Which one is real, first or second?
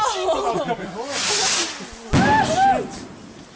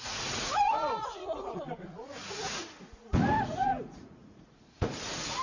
first